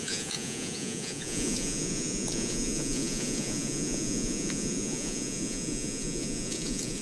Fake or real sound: fake